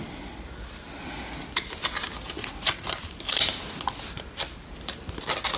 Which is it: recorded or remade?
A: recorded